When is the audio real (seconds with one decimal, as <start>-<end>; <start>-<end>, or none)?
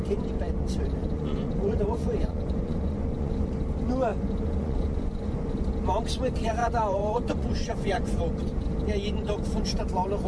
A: 0.0-1.0; 3.5-4.1; 5.5-6.6; 8.2-10.3